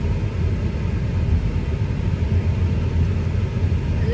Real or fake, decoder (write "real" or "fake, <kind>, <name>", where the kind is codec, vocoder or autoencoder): real